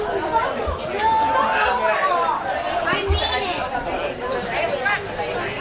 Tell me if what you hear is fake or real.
real